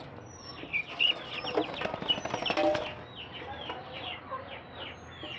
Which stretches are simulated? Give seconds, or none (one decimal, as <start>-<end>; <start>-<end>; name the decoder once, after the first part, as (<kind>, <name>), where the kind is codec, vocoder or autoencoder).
none